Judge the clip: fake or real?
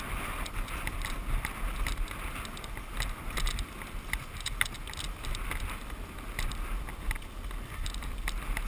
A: real